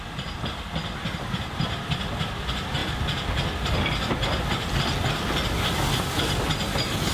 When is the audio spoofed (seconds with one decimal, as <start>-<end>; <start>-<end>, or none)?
none